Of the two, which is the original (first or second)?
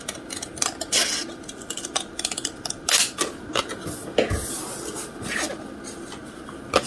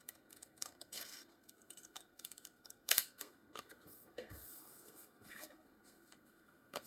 first